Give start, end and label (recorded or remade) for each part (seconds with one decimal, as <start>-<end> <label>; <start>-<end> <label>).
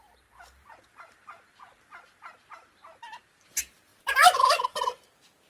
0.0-5.5 recorded